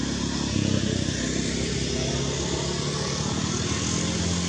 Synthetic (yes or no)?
no